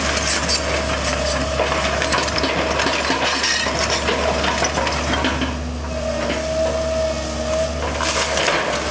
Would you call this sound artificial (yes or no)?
no